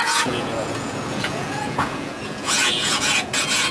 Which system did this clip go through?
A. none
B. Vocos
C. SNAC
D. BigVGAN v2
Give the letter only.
B